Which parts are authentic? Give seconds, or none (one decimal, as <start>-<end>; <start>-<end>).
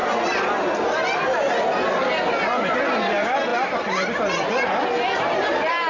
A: 0.0-5.9